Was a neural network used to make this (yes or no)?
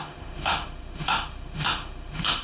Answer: yes